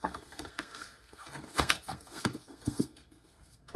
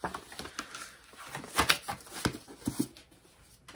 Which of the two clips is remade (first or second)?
first